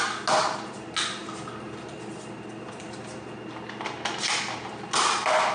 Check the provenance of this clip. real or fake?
real